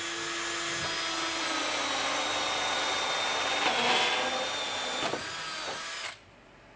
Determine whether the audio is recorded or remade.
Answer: recorded